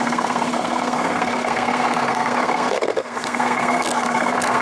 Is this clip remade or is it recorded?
remade